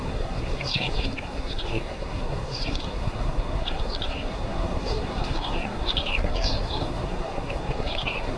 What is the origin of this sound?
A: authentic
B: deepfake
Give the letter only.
B